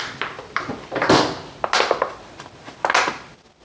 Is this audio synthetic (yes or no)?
no